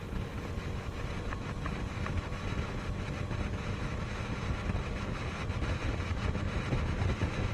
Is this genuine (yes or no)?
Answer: yes